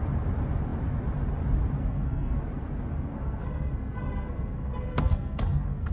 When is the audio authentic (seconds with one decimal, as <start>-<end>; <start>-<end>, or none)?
0.0-1.8; 2.4-2.9